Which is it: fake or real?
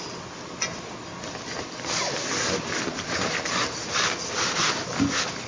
real